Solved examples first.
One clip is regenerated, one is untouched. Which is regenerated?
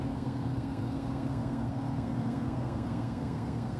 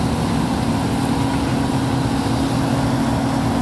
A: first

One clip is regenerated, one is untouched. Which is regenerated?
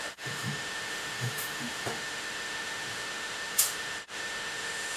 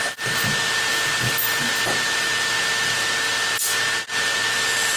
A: first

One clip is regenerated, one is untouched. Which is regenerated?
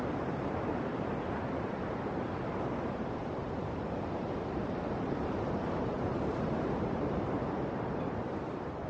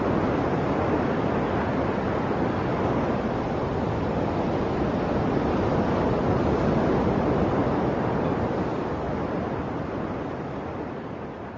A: first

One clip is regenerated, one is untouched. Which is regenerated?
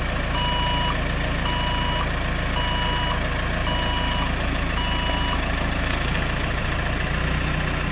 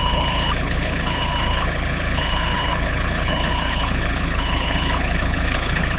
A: second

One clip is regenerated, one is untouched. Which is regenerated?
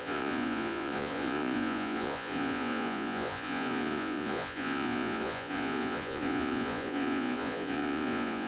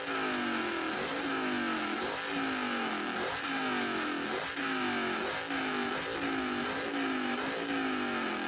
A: first